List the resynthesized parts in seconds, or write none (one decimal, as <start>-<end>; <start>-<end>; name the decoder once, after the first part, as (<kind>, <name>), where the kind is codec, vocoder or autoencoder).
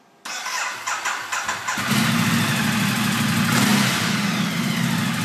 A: none